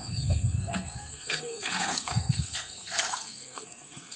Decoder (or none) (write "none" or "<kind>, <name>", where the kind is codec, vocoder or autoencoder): codec, SNAC